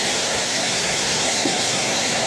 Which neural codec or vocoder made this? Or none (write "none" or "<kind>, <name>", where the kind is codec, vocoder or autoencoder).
codec, SNAC